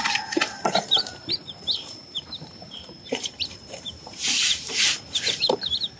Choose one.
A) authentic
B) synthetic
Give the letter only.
B